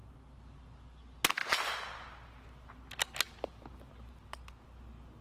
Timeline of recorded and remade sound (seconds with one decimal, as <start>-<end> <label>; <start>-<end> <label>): 0.0-5.2 recorded